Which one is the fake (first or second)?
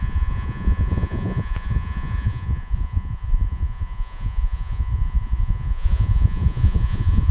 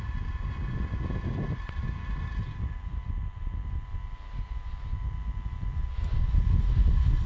first